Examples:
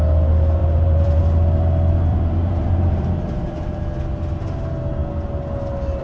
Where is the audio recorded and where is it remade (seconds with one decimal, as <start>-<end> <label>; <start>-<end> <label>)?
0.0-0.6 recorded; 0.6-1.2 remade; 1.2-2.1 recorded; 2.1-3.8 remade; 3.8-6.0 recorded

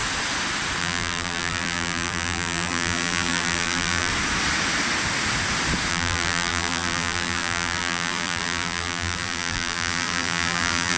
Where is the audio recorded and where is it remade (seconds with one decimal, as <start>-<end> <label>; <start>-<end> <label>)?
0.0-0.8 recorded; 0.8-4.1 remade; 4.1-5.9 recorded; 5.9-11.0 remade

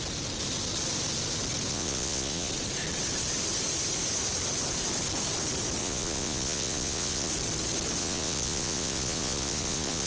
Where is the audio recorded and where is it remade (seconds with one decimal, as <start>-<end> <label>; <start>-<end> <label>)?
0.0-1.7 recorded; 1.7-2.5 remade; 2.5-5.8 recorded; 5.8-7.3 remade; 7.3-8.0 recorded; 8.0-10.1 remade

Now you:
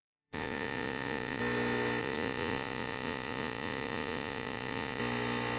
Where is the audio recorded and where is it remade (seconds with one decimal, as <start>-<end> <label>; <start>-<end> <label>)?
0.0-1.4 remade; 1.4-2.0 recorded; 2.0-5.0 remade; 5.0-5.6 recorded

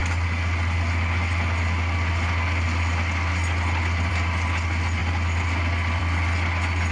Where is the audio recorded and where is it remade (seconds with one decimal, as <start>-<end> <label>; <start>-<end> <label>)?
0.0-6.9 recorded